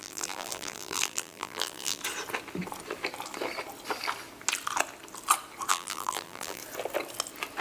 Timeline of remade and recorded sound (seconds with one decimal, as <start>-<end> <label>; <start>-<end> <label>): 0.0-2.0 remade; 2.0-5.7 recorded; 5.7-6.6 remade; 6.6-7.6 recorded